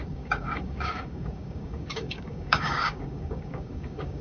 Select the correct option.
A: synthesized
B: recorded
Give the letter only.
A